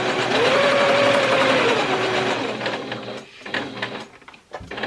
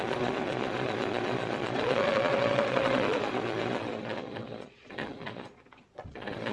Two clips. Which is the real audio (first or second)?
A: first